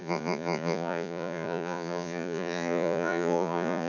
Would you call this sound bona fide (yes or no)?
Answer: no